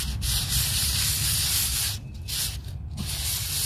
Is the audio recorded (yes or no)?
yes